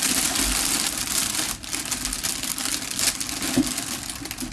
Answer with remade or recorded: recorded